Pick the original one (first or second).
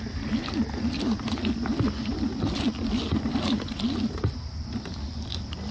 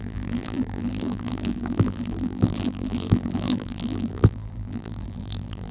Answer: first